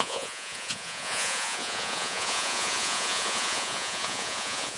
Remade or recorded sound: remade